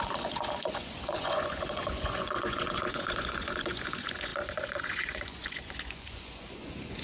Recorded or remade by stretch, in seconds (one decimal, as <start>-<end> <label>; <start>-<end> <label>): 0.0-7.0 remade